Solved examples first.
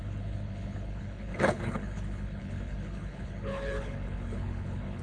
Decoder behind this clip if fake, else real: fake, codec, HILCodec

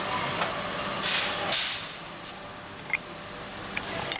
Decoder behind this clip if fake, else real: real